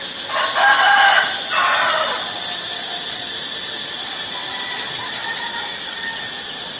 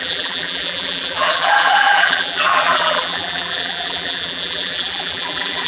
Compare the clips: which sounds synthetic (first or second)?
second